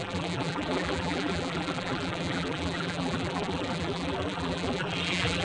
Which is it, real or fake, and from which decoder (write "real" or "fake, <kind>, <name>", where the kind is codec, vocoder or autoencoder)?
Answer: fake, vocoder, BigVGAN v2